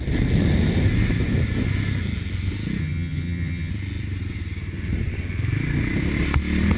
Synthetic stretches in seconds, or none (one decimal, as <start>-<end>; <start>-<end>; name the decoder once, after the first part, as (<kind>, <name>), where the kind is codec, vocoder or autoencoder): 2.8-3.7 (vocoder, HiFi-GAN)